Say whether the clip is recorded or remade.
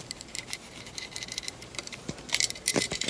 remade